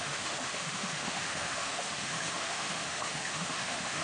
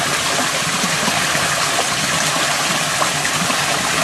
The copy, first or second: first